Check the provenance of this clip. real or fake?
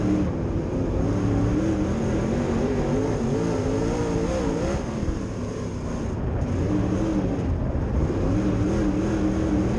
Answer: real